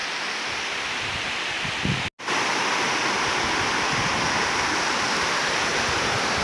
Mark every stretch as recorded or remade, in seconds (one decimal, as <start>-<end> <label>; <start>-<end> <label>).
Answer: 0.0-6.4 recorded